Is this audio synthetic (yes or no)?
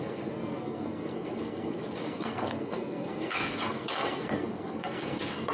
yes